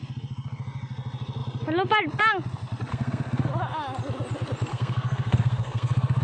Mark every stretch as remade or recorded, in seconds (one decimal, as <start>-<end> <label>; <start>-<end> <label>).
0.0-2.9 recorded; 2.9-3.5 remade; 3.5-4.7 recorded; 4.7-6.2 remade